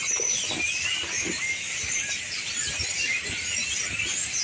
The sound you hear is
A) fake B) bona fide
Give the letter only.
B